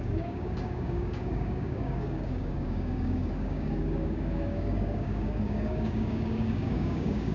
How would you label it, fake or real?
fake